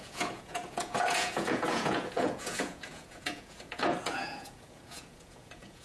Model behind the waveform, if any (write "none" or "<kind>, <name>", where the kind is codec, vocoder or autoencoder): vocoder, Vocos